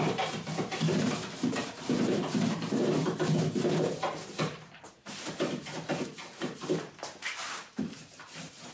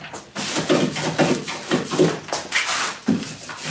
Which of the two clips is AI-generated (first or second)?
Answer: first